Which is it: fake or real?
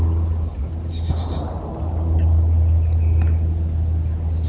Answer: real